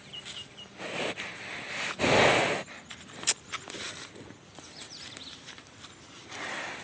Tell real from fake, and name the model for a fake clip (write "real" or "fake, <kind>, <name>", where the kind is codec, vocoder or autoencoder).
real